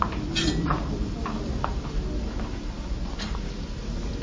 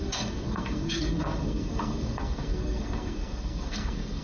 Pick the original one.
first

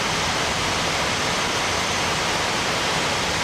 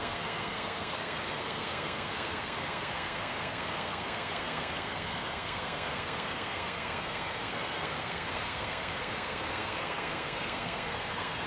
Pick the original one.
first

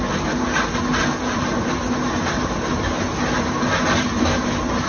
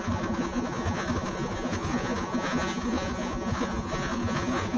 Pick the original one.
first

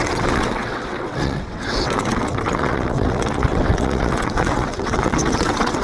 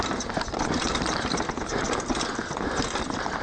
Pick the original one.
second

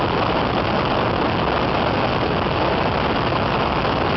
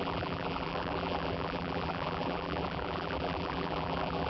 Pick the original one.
first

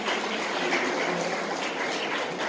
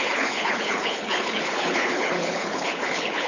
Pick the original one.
first